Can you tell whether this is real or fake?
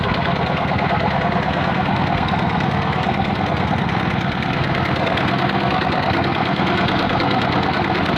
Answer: fake